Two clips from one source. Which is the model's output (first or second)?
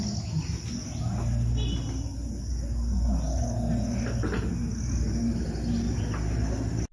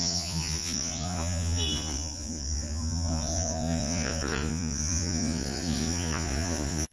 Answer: second